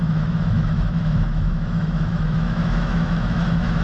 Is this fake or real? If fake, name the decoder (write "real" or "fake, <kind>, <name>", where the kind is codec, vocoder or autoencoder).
fake, autoencoder, DAC-VAE